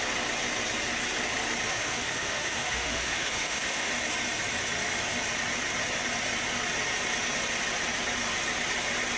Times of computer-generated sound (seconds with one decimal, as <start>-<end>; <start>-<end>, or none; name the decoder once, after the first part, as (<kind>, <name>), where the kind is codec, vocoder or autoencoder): 1.7-3.9 (autoencoder, DAC-VAE)